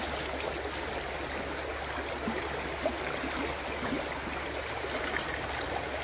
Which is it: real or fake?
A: real